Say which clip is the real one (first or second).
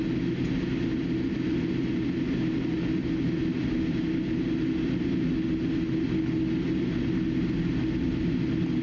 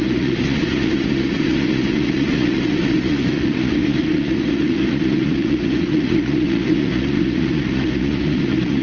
first